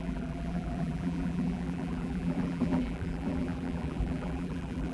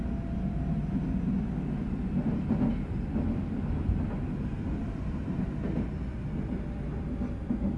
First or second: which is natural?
second